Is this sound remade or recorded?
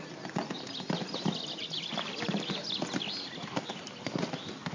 recorded